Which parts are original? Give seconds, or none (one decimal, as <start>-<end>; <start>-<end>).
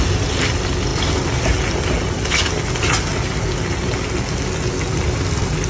0.0-5.7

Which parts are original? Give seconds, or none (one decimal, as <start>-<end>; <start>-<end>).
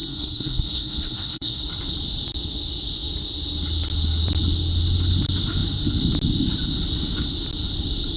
1.6-8.2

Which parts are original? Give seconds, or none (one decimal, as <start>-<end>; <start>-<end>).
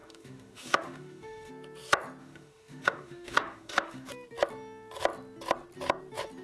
1.5-2.2; 4.1-6.4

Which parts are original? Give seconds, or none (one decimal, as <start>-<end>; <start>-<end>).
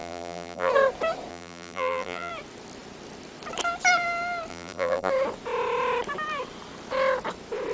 0.7-1.3; 2.3-4.5; 5.1-7.7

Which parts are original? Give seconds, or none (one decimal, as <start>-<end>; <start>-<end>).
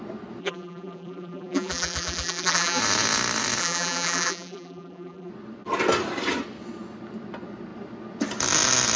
0.0-0.4; 2.8-3.6; 5.3-9.0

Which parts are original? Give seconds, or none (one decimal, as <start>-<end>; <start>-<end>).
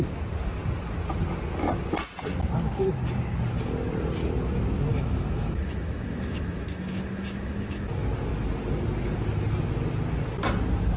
0.0-4.9; 7.9-11.0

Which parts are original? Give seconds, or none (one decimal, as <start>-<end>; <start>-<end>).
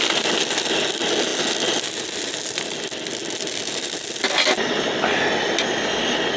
0.0-6.4